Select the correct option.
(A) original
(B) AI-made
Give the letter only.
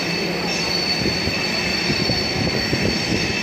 A